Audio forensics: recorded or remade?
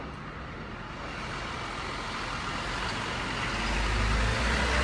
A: recorded